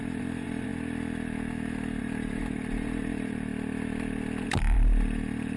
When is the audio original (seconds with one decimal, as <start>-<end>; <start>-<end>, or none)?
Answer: 0.7-2.0; 3.5-4.4